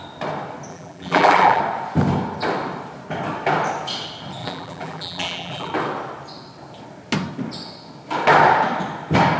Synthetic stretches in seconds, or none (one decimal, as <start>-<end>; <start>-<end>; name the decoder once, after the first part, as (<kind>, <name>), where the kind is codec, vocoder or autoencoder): 0.7-1.6 (vocoder, BigVGAN v2); 4.4-5.7

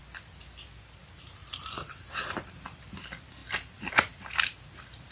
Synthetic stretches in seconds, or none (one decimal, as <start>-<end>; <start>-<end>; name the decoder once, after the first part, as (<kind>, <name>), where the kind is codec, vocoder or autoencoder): 1.4-2.8 (vocoder, BigVGAN v2)

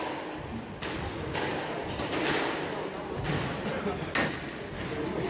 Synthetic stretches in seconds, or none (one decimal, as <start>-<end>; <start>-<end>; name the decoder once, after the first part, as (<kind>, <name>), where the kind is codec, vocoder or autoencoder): none

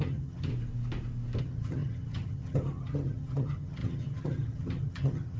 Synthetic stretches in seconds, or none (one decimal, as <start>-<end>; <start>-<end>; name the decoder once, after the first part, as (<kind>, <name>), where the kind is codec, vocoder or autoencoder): 0.0-0.5 (vocoder, HiFi-GAN); 1.4-5.4

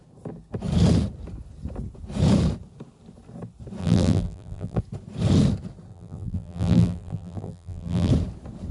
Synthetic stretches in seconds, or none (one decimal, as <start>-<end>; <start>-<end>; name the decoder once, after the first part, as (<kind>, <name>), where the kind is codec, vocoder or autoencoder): 3.8-4.8 (vocoder, BigVGAN v2); 5.9-8.1

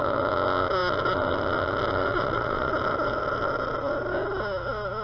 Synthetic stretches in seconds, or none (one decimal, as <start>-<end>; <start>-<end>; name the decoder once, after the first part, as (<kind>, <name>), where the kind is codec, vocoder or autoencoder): 2.1-2.7 (vocoder, Vocos)

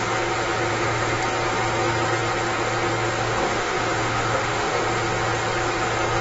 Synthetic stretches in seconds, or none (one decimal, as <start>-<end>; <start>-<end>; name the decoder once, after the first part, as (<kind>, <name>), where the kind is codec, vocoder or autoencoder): 0.7-1.2 (autoencoder, DAC-VAE); 3.4-4.8